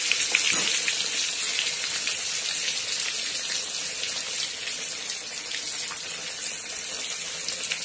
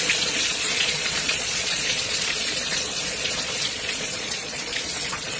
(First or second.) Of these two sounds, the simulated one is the second